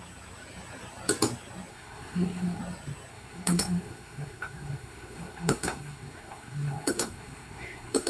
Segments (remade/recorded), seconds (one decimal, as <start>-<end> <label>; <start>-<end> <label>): 0.0-1.7 recorded; 1.7-2.6 remade; 2.6-3.1 recorded; 3.1-8.1 remade